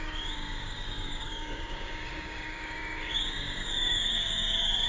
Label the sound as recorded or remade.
remade